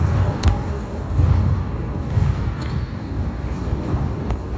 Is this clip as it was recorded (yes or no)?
no